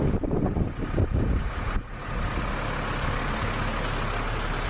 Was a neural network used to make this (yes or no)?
no